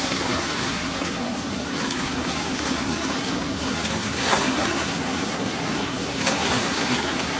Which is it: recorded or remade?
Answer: remade